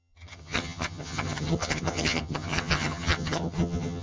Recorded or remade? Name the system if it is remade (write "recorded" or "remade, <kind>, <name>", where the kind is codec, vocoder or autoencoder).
remade, vocoder, HiFi-GAN